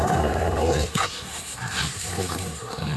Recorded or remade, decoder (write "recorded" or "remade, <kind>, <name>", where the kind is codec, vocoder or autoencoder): remade, codec, SNAC